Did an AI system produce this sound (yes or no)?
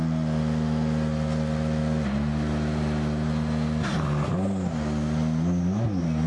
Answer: no